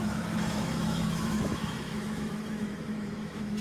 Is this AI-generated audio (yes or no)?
yes